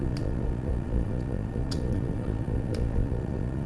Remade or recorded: remade